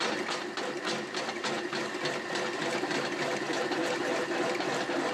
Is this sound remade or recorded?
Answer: recorded